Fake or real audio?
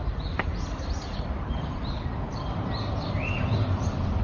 real